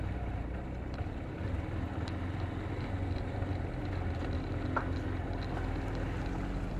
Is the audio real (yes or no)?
yes